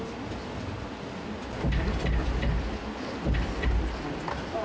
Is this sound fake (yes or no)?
no